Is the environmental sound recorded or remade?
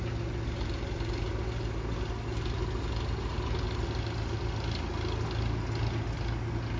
recorded